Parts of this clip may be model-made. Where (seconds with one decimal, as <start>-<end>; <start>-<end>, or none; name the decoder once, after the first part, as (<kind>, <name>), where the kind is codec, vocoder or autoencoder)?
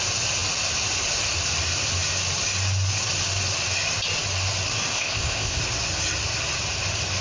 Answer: 4.9-5.6 (codec, ZipCodec)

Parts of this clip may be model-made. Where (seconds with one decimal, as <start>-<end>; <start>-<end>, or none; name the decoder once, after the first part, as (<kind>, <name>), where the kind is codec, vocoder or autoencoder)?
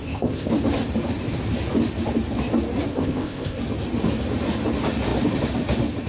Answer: 0.0-0.5 (codec, ZipCodec); 2.9-3.6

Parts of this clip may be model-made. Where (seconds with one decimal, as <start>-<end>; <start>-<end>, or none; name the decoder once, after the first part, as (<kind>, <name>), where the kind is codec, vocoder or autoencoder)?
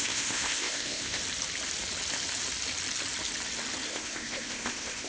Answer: 0.0-1.2 (codec, ZipCodec); 3.9-5.1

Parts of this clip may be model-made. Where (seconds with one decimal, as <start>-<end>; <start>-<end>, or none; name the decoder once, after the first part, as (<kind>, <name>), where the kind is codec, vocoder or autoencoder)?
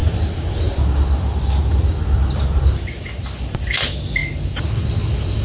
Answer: none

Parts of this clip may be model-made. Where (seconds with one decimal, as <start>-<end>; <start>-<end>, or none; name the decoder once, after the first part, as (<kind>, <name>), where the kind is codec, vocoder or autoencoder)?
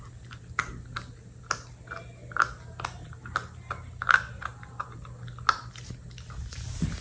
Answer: none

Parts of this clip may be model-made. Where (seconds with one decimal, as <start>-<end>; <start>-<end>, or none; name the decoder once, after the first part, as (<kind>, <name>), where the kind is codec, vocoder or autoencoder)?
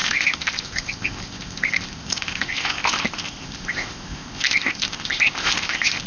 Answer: 0.0-6.1 (codec, ZipCodec)